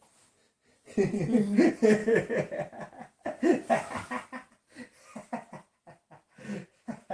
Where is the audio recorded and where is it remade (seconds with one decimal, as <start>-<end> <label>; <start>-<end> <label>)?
0.0-7.1 recorded